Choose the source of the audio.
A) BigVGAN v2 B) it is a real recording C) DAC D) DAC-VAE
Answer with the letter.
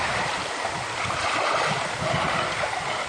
B